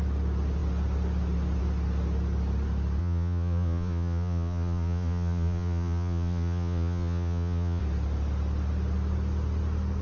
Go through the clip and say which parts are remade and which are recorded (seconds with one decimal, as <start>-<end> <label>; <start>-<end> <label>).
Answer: 0.0-3.0 recorded; 3.0-7.8 remade; 7.8-10.0 recorded